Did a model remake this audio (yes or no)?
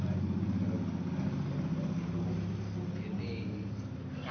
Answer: no